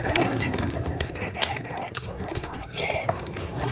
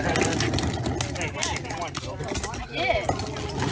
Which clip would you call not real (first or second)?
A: first